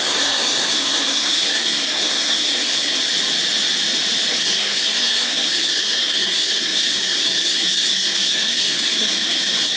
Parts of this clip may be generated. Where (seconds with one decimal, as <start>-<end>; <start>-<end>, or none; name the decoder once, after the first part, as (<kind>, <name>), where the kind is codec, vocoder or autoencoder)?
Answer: 0.0-3.0 (codec, SNAC); 4.3-9.8